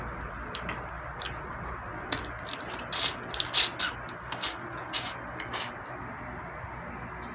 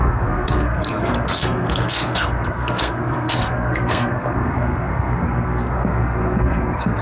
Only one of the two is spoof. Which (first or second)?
second